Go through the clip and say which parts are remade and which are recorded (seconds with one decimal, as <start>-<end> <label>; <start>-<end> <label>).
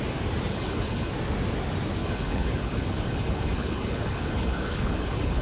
0.0-0.5 recorded; 0.5-1.1 remade; 1.1-2.0 recorded; 2.0-5.4 remade